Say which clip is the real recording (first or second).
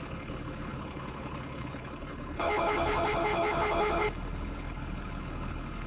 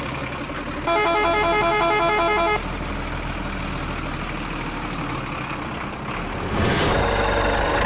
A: second